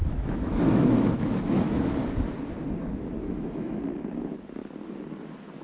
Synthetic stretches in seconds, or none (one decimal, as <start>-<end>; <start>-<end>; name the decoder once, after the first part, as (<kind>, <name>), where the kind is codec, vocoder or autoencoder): 0.0-1.8 (autoencoder, DAC-VAE); 3.2-3.8